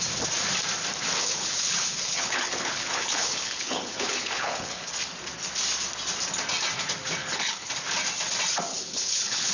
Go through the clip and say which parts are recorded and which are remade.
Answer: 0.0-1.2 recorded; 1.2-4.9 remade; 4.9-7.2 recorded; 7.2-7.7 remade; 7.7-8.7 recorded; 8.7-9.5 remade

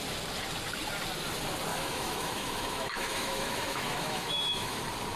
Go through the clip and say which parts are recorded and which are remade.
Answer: 0.0-1.7 recorded; 1.7-4.8 remade; 4.8-5.2 recorded

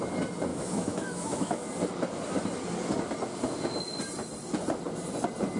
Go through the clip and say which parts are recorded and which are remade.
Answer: 0.0-0.5 recorded; 0.5-1.7 remade; 1.7-5.6 recorded